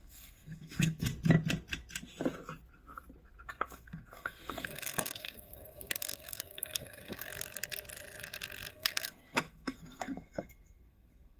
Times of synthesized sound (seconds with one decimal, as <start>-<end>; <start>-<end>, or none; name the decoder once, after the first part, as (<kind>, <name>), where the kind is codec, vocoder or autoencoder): 0.0-1.1 (codec, SNAC); 3.5-7.3; 8.7-11.4